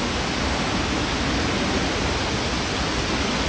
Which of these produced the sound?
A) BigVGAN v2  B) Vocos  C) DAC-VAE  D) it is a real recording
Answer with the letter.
D